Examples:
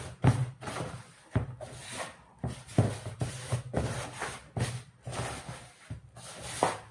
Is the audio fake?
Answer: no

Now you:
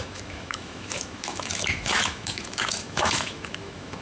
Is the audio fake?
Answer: yes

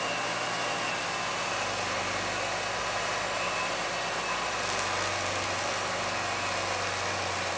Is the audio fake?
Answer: no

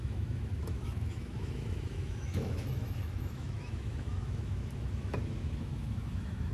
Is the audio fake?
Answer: yes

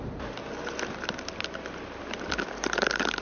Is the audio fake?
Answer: no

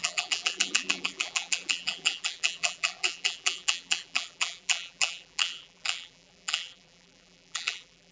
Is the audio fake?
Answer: yes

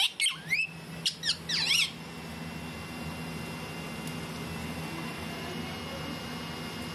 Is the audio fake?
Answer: no